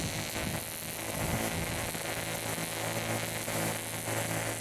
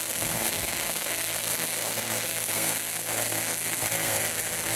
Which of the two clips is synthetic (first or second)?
second